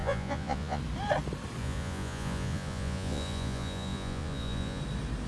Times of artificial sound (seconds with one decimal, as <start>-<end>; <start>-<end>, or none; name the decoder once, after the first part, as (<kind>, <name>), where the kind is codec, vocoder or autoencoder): 0.0-0.8 (vocoder, Vocos); 1.6-4.8